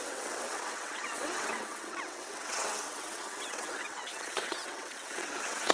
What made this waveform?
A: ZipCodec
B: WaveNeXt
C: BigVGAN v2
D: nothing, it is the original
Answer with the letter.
B